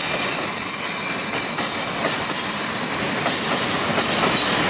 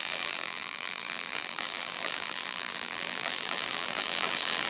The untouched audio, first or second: first